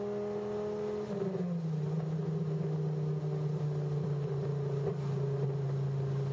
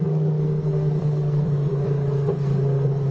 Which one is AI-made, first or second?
second